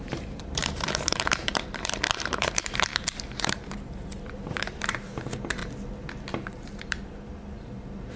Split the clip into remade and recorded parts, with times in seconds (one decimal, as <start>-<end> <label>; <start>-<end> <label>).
0.0-5.6 remade; 5.6-6.3 recorded; 6.3-8.2 remade